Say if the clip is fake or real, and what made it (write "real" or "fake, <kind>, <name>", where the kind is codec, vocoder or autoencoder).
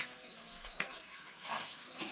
fake, codec, SNAC